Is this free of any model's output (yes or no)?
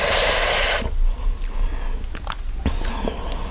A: yes